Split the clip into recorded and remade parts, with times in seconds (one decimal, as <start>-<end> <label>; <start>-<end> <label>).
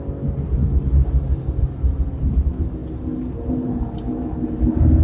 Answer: 0.0-5.0 recorded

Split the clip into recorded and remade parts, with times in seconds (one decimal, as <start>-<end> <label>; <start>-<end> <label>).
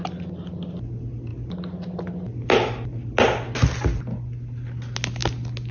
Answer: 0.0-5.7 recorded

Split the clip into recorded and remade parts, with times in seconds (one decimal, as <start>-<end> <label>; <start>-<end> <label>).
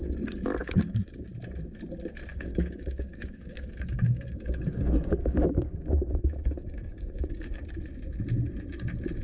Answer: 0.0-0.6 recorded; 0.6-1.3 remade; 1.3-2.3 recorded; 2.3-7.6 remade; 7.6-9.2 recorded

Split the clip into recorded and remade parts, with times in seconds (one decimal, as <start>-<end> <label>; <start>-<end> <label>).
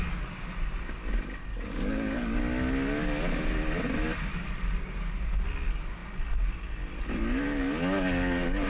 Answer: 0.0-1.5 recorded; 1.5-2.4 remade; 2.4-4.3 recorded; 4.3-5.1 remade; 5.1-8.7 recorded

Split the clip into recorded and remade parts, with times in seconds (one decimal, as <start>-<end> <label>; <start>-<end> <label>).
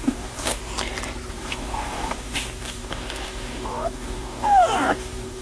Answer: 0.0-0.6 remade; 0.6-1.3 recorded; 1.3-5.4 remade